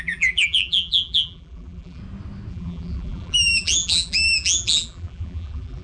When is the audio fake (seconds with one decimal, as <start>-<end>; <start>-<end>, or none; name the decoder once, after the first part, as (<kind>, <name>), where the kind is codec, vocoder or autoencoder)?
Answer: 0.0-2.0 (vocoder, BigVGAN v2); 2.5-5.8